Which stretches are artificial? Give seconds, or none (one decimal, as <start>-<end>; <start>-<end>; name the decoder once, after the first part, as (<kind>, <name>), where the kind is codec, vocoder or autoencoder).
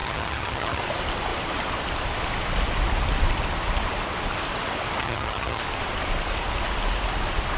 0.0-0.8 (vocoder, HiFi-GAN); 5.0-5.6